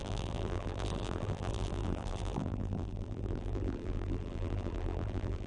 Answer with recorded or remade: remade